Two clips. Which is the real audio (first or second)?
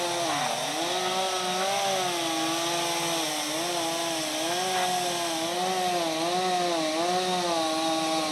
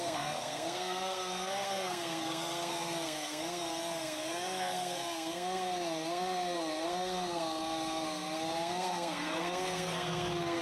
first